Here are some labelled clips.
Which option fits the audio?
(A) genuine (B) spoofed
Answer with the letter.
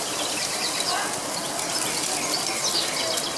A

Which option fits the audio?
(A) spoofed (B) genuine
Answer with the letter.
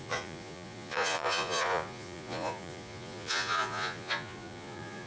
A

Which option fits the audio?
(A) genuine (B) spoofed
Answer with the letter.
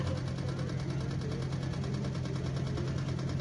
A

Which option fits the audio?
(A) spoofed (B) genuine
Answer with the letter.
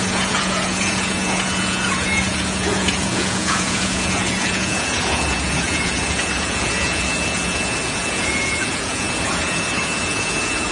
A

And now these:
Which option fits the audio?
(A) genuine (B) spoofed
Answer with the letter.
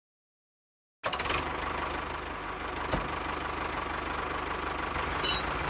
A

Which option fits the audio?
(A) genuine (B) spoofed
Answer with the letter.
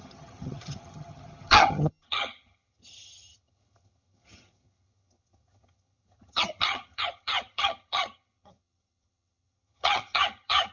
B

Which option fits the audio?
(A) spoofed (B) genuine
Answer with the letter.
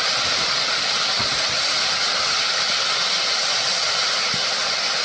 B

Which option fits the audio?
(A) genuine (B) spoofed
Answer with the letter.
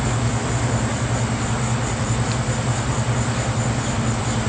B